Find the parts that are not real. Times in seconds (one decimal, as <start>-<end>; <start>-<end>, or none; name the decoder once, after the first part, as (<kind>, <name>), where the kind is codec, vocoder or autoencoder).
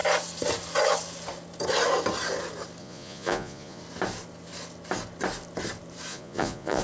2.8-3.8 (vocoder, Vocos); 6.1-6.8